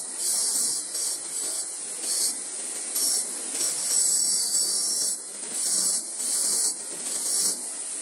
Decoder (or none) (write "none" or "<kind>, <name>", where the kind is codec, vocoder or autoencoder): none